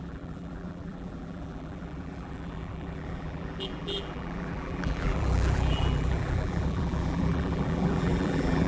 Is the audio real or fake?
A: fake